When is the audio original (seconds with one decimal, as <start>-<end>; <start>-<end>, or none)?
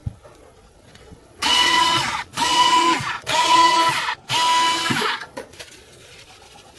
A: 3.8-5.1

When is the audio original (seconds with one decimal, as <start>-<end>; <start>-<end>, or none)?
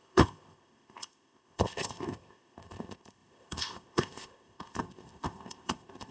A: none